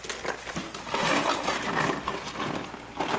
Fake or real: real